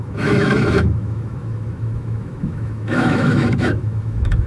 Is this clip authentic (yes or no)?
no